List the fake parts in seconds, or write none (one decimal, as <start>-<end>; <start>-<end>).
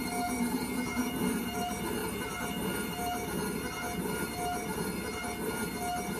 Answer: 1.0-1.6